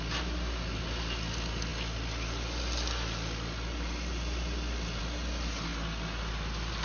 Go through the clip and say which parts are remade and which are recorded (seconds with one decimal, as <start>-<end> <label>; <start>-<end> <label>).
0.0-6.8 recorded